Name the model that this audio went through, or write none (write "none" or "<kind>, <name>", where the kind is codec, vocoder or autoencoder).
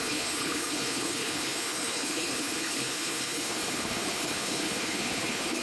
codec, HILCodec